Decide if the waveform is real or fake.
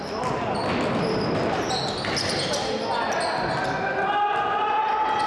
real